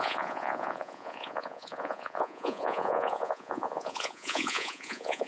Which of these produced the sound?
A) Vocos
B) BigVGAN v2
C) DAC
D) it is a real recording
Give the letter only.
A